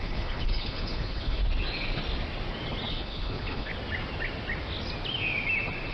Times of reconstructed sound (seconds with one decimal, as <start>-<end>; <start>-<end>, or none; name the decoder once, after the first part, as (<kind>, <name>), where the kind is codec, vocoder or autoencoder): 0.0-1.4 (codec, HILCodec); 2.9-3.7